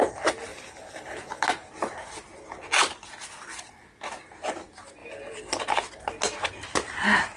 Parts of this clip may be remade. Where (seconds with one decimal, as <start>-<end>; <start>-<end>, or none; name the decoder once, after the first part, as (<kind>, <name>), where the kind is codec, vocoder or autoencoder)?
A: none